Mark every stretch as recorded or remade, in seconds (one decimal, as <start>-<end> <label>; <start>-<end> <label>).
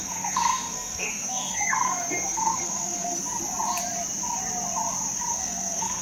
0.0-3.2 remade; 3.2-5.3 recorded; 5.3-6.0 remade